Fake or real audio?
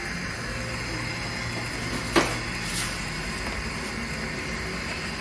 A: real